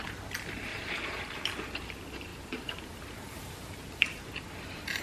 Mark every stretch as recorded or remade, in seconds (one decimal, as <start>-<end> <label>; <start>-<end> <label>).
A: 0.0-0.7 recorded; 0.7-1.4 remade; 1.4-2.3 recorded; 2.3-4.2 remade; 4.2-5.0 recorded